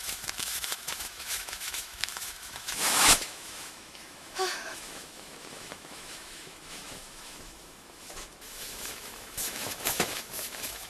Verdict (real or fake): fake